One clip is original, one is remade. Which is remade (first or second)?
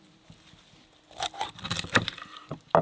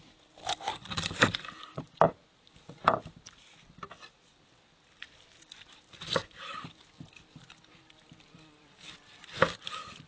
second